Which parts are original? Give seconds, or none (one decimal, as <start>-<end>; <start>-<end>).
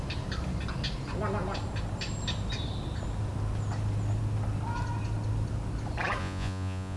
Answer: 0.0-6.2